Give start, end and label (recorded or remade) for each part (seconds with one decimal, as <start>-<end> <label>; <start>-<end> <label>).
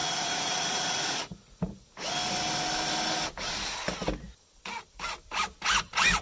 0.0-1.7 remade; 1.7-6.2 recorded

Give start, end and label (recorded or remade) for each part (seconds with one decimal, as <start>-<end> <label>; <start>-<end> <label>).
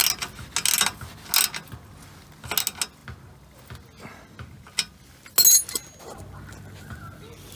0.0-7.6 recorded